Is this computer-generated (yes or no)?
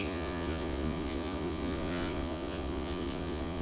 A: yes